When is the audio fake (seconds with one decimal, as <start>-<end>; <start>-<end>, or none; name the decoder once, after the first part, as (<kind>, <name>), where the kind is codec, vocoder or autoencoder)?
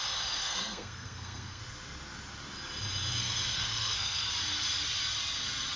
0.4-1.6 (codec, SNAC); 3.2-4.3